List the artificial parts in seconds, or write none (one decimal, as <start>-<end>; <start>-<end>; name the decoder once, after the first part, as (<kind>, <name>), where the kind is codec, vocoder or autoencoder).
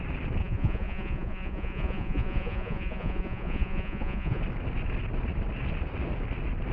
0.4-4.4 (vocoder, Vocos)